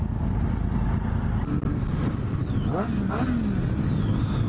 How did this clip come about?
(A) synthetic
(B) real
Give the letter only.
B